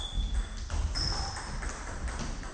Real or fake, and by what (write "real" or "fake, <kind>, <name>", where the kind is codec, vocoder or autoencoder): real